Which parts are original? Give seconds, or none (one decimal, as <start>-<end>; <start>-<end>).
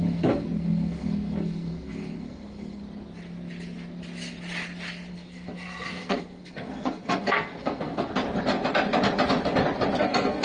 2.8-5.1; 8.1-10.0